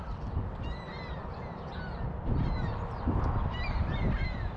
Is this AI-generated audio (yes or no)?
no